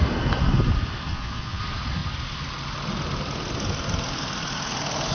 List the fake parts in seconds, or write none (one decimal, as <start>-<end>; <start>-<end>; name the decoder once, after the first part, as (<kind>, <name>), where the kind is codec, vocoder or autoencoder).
1.1-1.6 (vocoder, Vocos)